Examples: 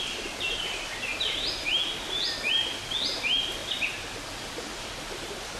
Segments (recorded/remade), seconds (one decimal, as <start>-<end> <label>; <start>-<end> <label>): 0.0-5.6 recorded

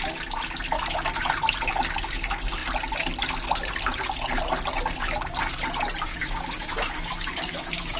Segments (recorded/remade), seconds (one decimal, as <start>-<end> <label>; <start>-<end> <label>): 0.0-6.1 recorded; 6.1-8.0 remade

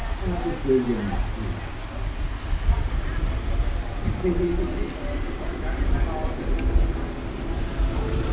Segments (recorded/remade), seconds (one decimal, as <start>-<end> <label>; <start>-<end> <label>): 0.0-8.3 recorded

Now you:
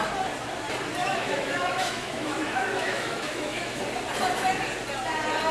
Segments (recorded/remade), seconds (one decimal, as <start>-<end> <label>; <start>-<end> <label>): 0.0-1.0 recorded; 1.0-3.8 remade; 3.8-5.5 recorded

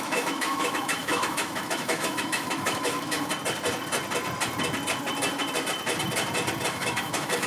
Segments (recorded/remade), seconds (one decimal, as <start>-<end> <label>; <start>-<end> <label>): 0.0-3.3 remade; 3.3-6.7 recorded; 6.7-7.5 remade

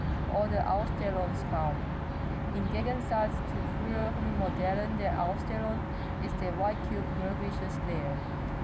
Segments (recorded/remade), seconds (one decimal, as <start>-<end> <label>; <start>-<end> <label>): 0.0-8.1 recorded; 8.1-8.6 remade

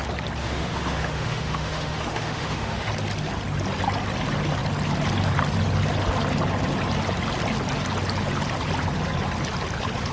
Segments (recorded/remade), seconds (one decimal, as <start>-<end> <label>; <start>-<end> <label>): 0.0-0.4 recorded; 0.4-2.9 remade; 2.9-10.1 recorded